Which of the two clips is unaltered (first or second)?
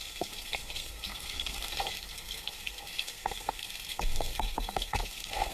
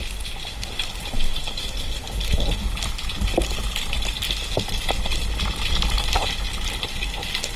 second